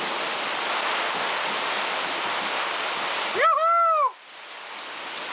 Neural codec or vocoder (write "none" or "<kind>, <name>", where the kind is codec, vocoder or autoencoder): none